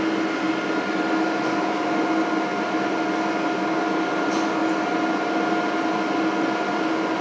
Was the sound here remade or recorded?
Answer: recorded